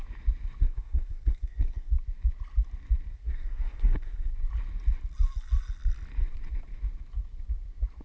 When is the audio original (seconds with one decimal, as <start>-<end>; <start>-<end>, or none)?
0.0-0.6; 1.9-3.1; 4.3-8.0

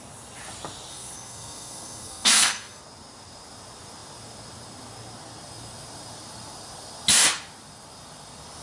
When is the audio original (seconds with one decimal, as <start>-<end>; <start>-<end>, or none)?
0.0-0.9; 2.8-8.6

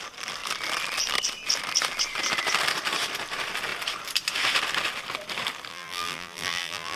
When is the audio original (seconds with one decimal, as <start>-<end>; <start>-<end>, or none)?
0.0-5.7

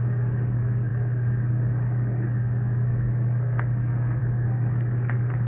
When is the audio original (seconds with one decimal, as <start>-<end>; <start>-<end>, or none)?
none